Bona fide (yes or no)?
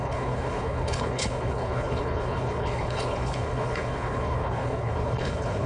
no